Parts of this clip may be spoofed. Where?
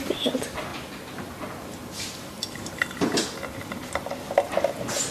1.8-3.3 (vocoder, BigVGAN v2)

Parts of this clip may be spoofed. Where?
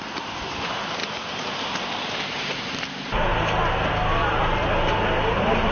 0.0-1.0 (vocoder, BigVGAN v2); 2.1-3.3; 3.9-5.7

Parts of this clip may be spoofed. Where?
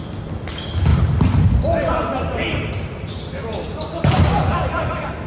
0.0-0.9 (vocoder, BigVGAN v2); 4.1-5.3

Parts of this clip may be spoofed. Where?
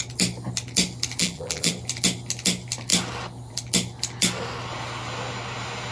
1.2-1.7 (vocoder, BigVGAN v2)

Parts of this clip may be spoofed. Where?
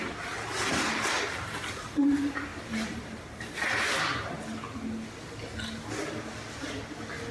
2.5-4.4 (vocoder, BigVGAN v2)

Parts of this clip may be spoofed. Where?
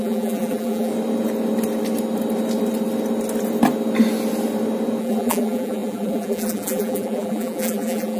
0.0-0.9 (vocoder, BigVGAN v2); 5.0-8.2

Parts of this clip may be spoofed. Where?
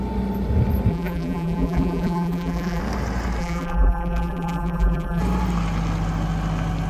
0.9-2.8 (vocoder, BigVGAN v2); 3.4-5.2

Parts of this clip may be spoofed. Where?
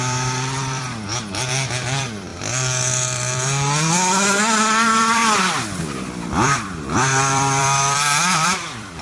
0.0-5.2 (vocoder, BigVGAN v2); 6.3-9.0